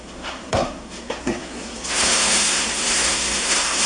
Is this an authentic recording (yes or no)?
no